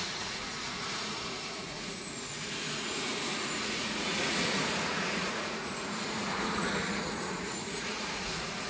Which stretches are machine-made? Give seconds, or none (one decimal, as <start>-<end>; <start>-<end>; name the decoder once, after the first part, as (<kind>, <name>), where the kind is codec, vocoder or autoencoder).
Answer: 0.0-8.7 (vocoder, Vocos)